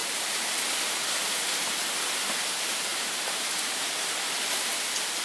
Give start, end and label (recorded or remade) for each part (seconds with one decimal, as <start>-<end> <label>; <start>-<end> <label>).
0.0-2.2 remade; 2.2-2.9 recorded; 2.9-3.8 remade; 3.8-5.2 recorded